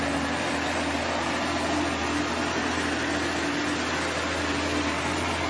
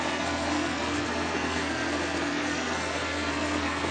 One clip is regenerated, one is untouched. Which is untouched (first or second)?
first